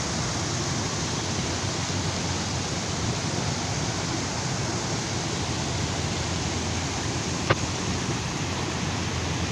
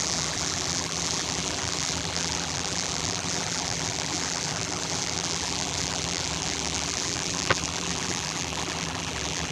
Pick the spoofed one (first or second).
second